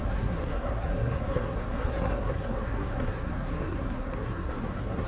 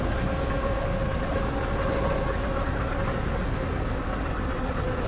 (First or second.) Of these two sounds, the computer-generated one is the first